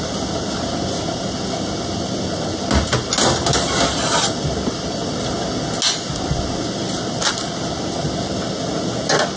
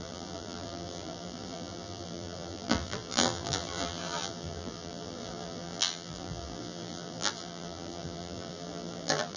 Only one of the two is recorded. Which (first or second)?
first